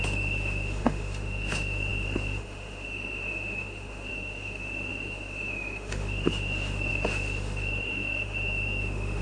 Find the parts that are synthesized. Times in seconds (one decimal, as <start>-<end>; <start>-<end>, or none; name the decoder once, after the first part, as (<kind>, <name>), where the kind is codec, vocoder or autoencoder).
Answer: 0.0-9.2 (autoencoder, DAC-VAE)

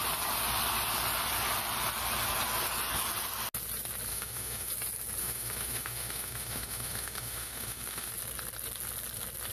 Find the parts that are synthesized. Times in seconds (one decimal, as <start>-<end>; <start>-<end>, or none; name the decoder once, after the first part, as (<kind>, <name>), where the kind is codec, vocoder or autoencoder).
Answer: 4.1-4.7 (autoencoder, DAC-VAE); 5.2-8.1

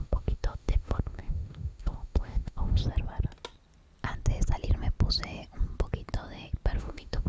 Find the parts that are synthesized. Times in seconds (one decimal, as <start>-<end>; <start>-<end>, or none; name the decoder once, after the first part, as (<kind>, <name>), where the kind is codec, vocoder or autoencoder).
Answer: 0.0-2.8 (autoencoder, DAC-VAE); 6.8-7.3

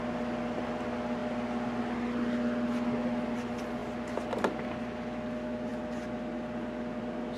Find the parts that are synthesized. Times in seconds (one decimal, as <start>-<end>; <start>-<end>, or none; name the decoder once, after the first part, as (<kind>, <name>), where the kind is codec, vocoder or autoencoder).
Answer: none

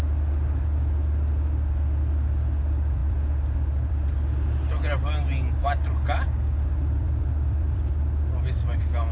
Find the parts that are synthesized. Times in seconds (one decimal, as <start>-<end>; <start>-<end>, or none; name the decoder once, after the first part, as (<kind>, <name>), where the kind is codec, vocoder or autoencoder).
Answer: none